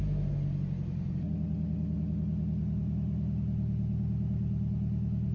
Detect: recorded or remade recorded